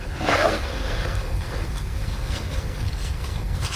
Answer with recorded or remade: remade